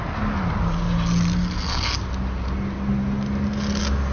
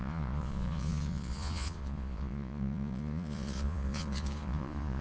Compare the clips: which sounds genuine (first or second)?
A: first